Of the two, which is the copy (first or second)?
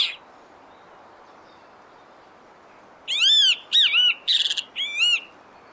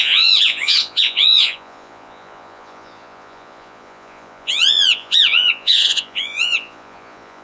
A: second